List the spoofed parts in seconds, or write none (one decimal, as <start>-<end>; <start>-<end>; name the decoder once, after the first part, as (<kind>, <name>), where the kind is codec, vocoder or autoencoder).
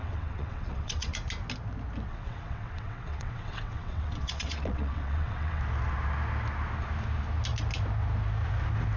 0.0-1.1 (vocoder, WaveNeXt); 2.1-5.6